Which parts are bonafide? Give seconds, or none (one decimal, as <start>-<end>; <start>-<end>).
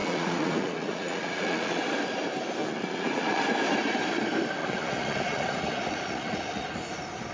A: 1.8-2.6; 3.4-4.6; 6.7-7.3